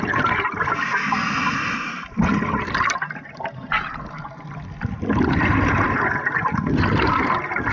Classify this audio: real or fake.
real